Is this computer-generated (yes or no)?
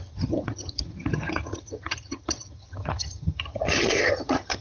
yes